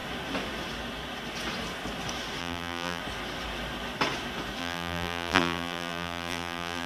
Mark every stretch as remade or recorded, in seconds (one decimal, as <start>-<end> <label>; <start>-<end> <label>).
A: 0.0-2.4 recorded; 2.4-3.0 remade; 3.0-4.6 recorded; 4.6-6.9 remade